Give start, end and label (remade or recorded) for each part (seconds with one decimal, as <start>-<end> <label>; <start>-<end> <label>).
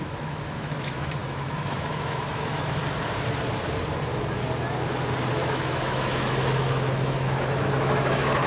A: 0.0-2.8 remade; 2.8-5.3 recorded; 5.3-8.5 remade